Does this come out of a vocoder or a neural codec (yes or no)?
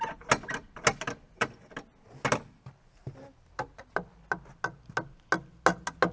no